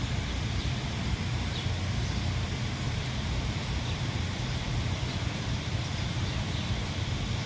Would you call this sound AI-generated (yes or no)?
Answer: yes